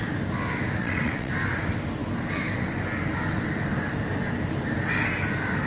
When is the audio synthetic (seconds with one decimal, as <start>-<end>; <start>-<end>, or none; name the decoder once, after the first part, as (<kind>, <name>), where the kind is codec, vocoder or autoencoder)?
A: 0.8-1.3 (vocoder, WaveNeXt)